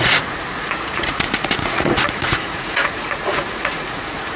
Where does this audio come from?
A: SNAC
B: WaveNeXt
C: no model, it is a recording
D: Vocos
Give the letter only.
D